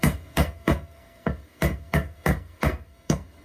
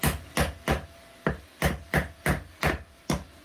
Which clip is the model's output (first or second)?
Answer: first